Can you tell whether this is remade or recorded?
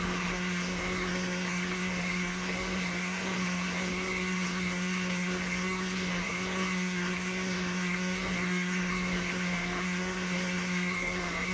remade